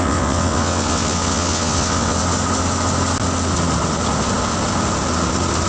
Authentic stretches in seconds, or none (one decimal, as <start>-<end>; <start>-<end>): 2.2-5.7